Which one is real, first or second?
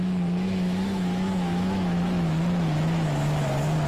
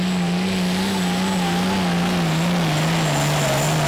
second